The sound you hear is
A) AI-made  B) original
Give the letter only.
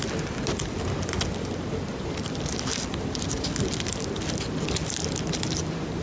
B